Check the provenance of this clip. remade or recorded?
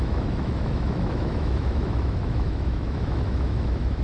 remade